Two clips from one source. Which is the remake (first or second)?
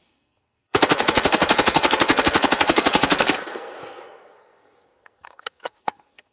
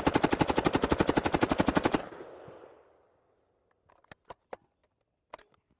first